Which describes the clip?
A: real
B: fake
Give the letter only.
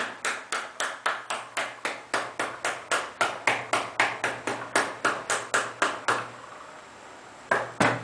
A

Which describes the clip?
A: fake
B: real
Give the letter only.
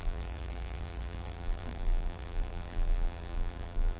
A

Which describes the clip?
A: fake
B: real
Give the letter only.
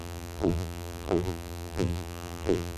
A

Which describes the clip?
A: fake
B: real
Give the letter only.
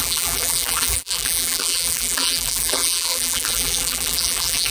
A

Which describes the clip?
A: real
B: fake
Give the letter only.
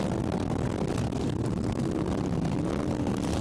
A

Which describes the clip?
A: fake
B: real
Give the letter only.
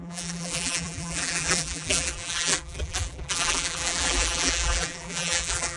A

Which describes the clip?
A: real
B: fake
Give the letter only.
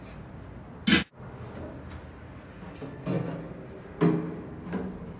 A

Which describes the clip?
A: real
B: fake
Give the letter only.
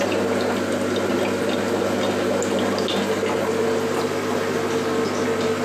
A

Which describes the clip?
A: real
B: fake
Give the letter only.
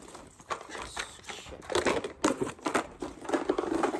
A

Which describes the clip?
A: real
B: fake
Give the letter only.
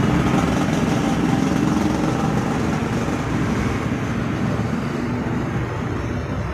A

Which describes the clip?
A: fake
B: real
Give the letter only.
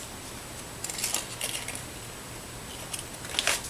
B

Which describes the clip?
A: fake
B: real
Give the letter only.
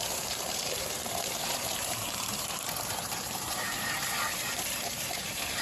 A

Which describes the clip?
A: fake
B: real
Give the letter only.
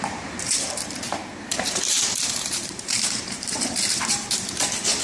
A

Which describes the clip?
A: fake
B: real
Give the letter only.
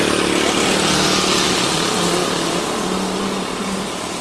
B